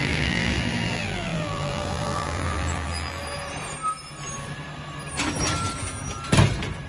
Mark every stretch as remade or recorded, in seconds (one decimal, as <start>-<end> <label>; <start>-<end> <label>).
0.0-3.2 remade; 3.2-6.9 recorded